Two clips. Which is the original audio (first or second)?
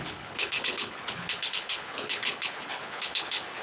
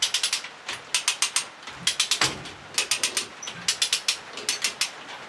second